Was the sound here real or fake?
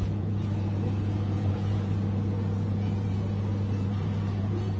fake